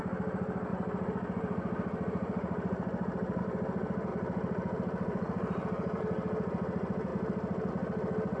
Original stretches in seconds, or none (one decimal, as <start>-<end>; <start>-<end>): 0.0-0.7; 3.4-4.1; 6.0-8.4